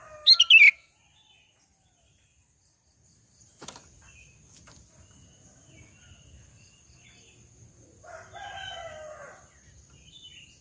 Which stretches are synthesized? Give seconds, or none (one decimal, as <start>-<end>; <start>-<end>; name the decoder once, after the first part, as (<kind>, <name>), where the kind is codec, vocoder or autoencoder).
none